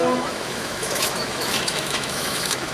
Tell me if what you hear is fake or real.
fake